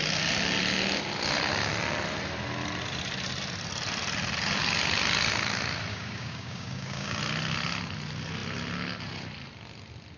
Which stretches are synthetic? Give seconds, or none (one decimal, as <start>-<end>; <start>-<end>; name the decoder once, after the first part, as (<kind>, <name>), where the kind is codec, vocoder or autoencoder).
5.9-7.2 (codec, DAC)